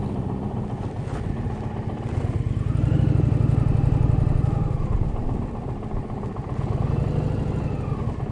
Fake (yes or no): no